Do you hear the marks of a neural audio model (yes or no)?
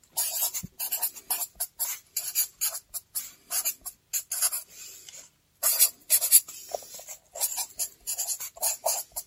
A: no